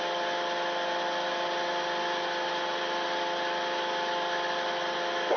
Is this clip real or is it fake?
real